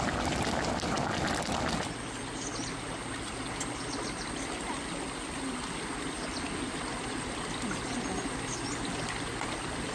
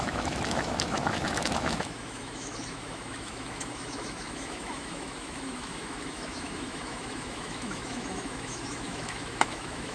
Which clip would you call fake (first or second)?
second